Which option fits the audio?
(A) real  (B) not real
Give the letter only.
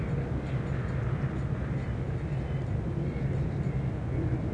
A